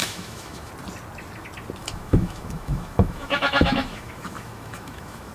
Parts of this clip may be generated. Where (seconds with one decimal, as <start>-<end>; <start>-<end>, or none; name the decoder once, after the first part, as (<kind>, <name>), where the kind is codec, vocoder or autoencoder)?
0.0-0.7 (autoencoder, DAC-VAE); 1.8-5.3